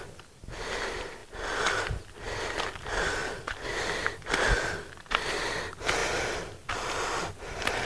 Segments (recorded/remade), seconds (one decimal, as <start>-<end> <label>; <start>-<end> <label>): 0.0-7.9 recorded